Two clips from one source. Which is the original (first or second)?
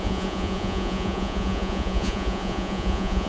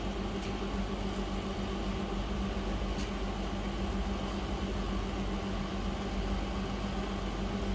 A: second